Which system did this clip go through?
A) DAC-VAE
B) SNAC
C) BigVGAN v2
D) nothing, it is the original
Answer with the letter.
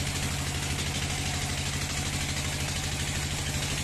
D